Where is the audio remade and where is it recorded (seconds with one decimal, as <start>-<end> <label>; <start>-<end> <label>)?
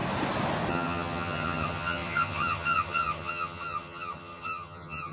0.0-0.7 recorded; 0.7-5.1 remade